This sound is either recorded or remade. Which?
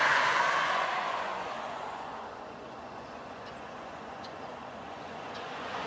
remade